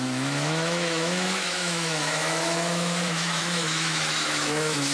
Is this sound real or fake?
fake